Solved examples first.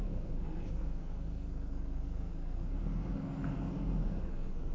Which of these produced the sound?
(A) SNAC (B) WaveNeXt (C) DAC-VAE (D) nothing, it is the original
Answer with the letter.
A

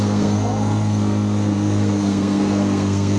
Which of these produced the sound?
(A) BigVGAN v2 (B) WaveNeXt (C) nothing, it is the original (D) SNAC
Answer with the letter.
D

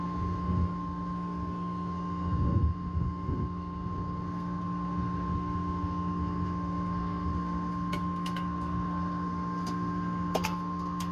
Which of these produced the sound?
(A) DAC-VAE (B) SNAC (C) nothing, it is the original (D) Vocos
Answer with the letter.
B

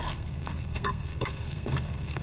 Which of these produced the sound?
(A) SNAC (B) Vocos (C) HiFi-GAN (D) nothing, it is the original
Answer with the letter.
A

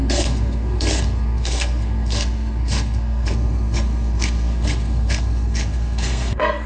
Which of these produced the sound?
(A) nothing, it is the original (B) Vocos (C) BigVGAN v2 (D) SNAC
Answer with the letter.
D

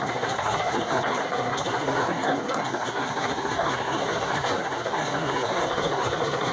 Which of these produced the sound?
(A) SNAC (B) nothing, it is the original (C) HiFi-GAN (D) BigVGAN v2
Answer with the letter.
A